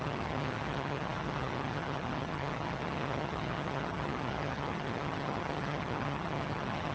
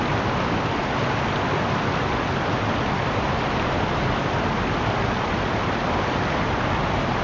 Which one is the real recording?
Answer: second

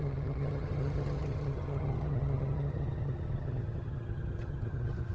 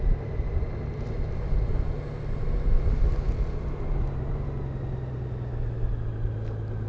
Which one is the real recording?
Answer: second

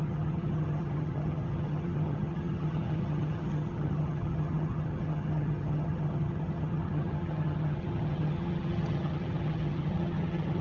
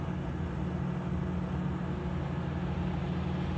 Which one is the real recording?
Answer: second